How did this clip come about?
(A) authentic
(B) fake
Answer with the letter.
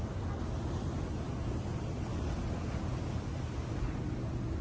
A